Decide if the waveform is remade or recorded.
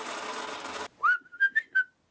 recorded